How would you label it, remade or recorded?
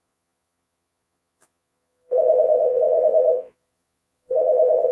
remade